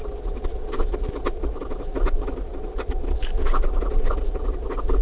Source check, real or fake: real